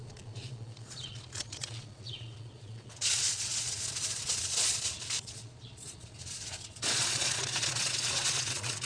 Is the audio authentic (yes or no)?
no